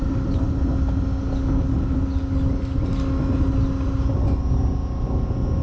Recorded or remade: recorded